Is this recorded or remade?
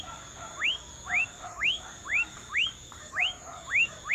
remade